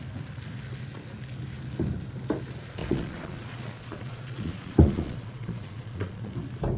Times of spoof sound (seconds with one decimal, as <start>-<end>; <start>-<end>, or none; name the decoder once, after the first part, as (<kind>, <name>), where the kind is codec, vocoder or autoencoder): 2.8-6.3 (vocoder, Vocos)